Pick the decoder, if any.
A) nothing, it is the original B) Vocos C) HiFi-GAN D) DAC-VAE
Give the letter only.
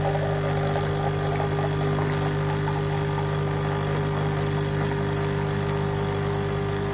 A